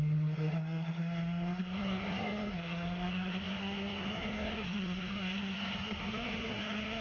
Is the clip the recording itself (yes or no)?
no